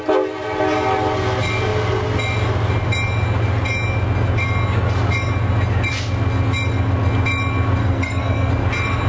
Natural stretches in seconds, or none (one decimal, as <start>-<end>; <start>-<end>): 0.0-7.8; 8.5-9.1